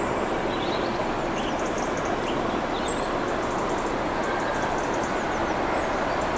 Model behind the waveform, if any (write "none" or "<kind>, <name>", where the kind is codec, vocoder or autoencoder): none